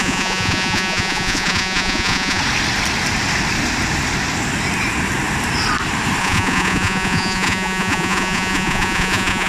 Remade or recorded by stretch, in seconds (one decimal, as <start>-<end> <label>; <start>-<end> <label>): 0.0-2.4 remade; 2.4-6.2 recorded; 6.2-9.5 remade